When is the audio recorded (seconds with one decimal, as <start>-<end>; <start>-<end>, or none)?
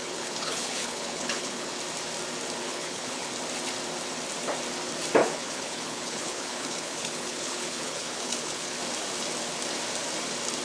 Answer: 1.7-2.6; 3.3-5.2; 8.8-10.6